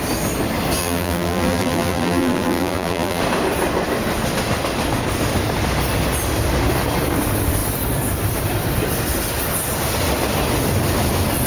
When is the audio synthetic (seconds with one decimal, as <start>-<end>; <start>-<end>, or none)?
0.8-3.2